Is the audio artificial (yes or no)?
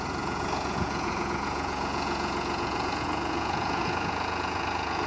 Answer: yes